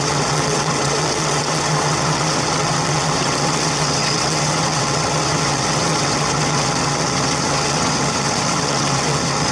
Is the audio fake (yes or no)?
yes